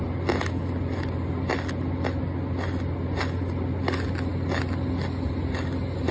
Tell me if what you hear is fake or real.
real